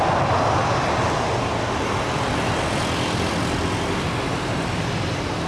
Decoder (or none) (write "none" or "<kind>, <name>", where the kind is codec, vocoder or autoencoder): none